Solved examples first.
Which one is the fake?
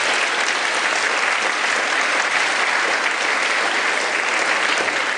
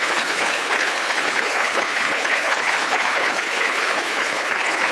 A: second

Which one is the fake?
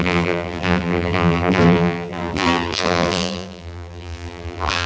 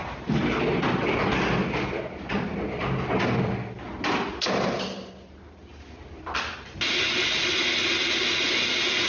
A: first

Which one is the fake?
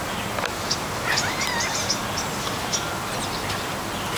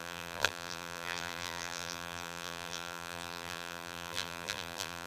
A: second